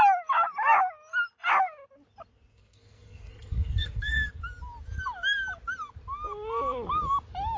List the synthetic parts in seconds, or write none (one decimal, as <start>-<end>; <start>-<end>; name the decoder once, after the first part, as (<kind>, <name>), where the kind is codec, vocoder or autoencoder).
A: 2.5-4.3 (codec, SNAC)